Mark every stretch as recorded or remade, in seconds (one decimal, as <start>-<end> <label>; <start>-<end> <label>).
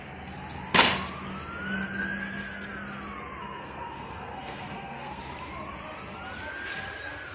0.0-3.4 recorded; 3.4-5.2 remade; 5.2-7.3 recorded